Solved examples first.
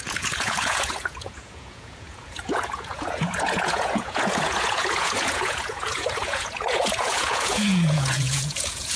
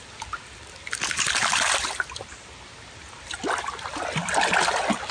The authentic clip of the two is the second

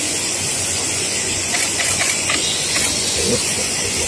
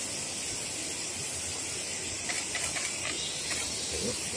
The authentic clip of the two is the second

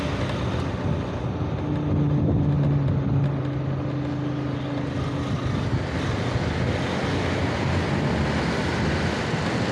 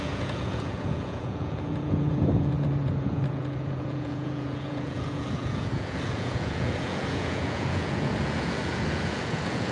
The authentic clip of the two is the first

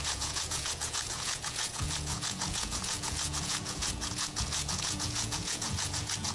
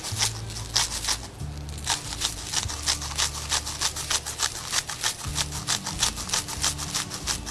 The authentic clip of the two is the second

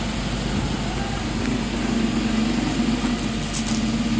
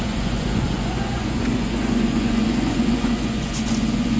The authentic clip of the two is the first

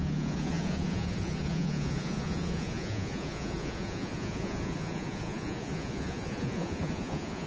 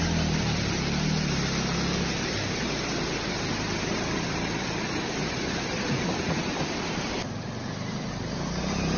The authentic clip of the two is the second